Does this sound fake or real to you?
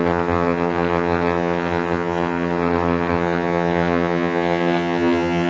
fake